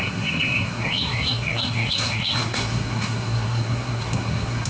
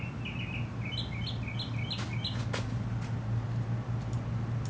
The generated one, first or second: first